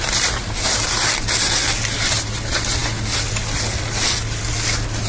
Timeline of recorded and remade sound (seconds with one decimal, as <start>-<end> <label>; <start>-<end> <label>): 0.0-5.1 recorded

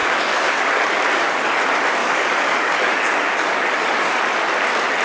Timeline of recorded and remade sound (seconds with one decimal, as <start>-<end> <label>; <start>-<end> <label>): 0.0-1.6 remade; 1.6-2.0 recorded; 2.0-4.2 remade; 4.2-5.0 recorded

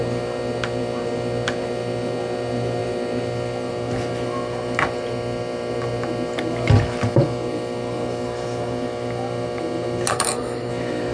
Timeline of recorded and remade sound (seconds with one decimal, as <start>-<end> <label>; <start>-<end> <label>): 0.0-10.1 recorded; 10.1-10.7 remade; 10.7-11.1 recorded

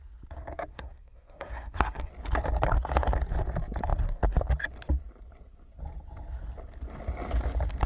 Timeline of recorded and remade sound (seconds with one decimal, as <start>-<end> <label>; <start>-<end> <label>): 0.0-0.7 recorded; 0.7-2.1 remade; 2.1-7.9 recorded

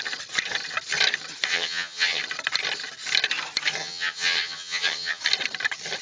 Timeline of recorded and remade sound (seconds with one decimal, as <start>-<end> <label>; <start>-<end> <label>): 0.0-1.5 recorded; 1.5-2.2 remade; 2.2-3.8 recorded; 3.8-5.2 remade; 5.2-6.0 recorded

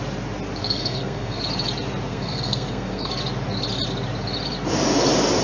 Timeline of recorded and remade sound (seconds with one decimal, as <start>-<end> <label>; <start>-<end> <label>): 0.0-0.6 recorded; 0.6-1.4 remade; 1.4-2.1 recorded; 2.1-3.1 remade; 3.1-5.4 recorded

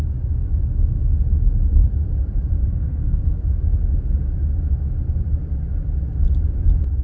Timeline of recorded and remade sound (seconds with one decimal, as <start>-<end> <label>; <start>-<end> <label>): 0.0-2.6 recorded; 2.6-3.2 remade; 3.2-7.0 recorded